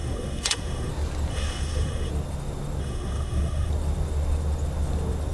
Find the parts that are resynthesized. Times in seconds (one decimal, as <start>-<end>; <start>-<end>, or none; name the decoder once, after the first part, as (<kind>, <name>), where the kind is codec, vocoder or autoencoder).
0.0-0.9 (codec, SNAC); 1.3-2.1; 2.8-3.7